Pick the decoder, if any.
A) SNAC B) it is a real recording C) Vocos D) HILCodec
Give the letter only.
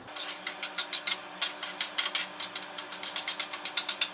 B